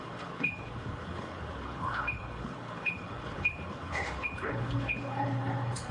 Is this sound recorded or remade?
remade